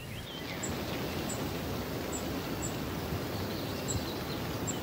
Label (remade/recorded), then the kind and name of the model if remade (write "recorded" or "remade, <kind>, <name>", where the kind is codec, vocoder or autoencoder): recorded